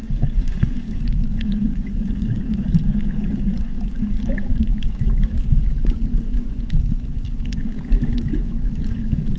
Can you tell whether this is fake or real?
fake